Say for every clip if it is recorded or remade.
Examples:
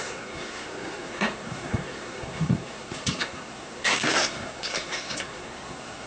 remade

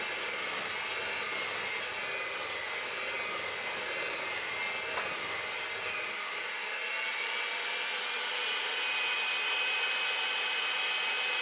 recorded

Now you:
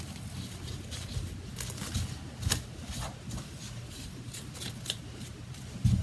recorded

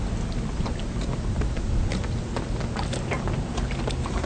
recorded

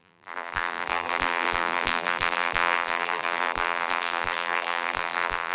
remade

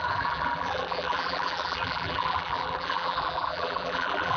remade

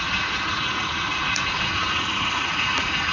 remade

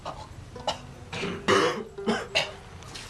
recorded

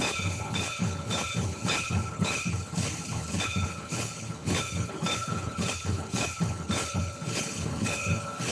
remade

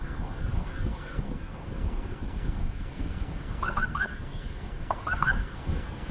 remade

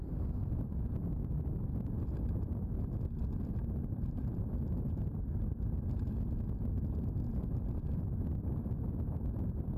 recorded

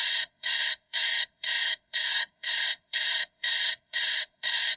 remade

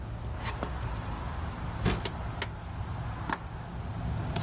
recorded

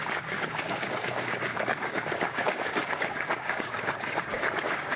remade